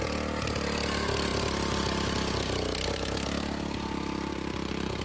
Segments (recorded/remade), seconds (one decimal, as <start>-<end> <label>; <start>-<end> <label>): 0.0-5.0 recorded